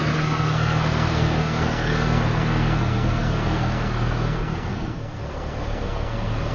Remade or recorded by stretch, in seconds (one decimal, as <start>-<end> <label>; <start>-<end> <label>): 0.0-6.5 remade